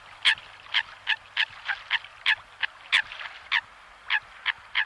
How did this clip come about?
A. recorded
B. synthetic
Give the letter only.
A